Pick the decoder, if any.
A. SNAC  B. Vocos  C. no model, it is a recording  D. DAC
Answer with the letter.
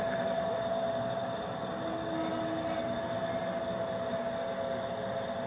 C